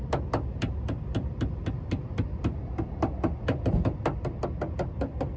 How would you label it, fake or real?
real